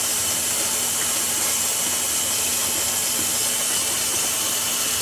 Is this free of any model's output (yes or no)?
yes